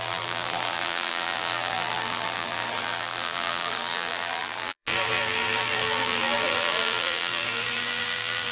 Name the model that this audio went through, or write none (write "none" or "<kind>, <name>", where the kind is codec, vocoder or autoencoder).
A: vocoder, BigVGAN v2